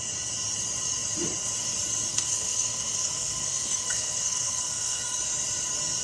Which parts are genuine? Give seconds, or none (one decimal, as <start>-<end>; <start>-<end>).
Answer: 0.0-2.1; 5.2-6.0